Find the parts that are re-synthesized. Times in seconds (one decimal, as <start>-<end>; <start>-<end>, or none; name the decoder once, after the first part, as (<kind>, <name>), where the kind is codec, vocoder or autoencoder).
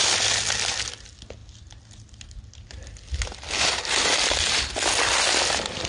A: none